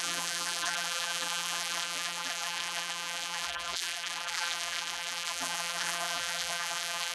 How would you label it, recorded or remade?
remade